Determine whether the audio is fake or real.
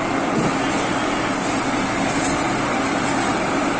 real